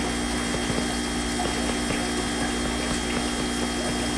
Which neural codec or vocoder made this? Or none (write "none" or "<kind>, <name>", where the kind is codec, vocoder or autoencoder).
none